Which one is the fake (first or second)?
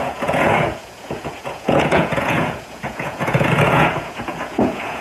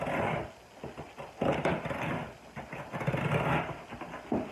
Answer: first